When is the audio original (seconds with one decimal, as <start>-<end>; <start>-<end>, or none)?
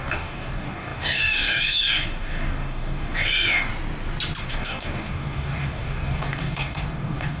3.7-4.4